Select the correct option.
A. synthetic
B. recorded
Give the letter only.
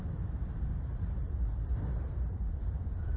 A